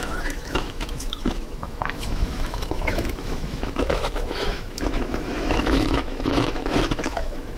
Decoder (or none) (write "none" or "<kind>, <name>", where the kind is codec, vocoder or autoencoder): autoencoder, DAC-VAE